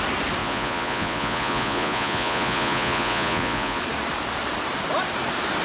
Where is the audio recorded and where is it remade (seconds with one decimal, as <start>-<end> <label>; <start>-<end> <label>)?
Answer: 0.0-0.4 recorded; 0.4-3.8 remade; 3.8-5.6 recorded